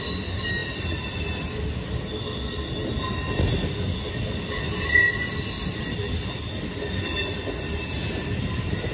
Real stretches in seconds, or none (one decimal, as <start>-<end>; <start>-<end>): 0.0-8.9